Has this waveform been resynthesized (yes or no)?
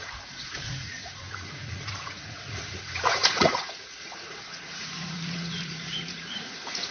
yes